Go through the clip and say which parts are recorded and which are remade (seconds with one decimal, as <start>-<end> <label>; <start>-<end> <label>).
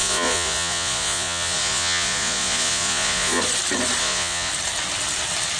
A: 0.0-3.4 remade; 3.4-4.0 recorded; 4.0-4.5 remade; 4.5-5.6 recorded